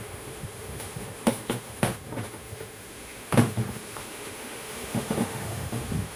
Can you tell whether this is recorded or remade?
remade